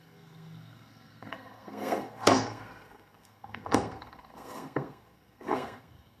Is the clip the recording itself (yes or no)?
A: no